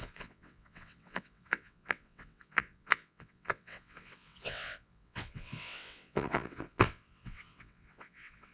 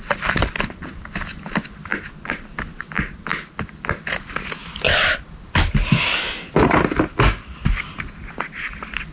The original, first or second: second